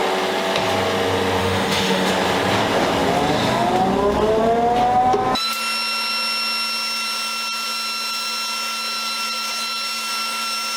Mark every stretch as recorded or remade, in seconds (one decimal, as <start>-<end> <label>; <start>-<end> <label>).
0.0-1.4 recorded; 1.4-2.1 remade; 2.1-10.8 recorded